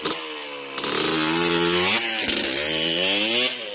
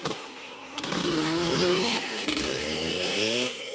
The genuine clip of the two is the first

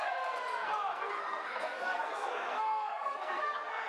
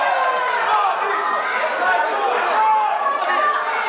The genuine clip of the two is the second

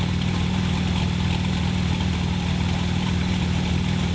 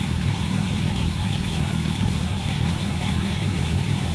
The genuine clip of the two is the first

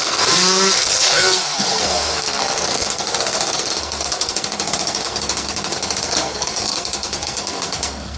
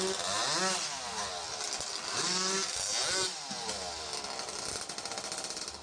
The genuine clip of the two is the second